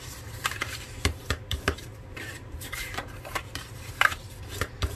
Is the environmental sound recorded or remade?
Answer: remade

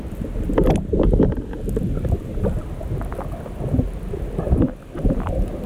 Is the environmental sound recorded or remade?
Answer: recorded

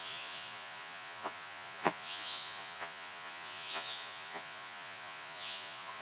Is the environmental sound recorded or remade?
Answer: remade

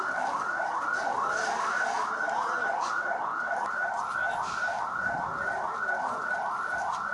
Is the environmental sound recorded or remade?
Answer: recorded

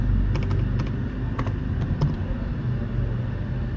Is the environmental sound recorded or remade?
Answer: recorded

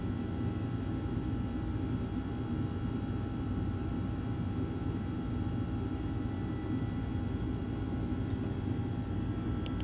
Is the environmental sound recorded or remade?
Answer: recorded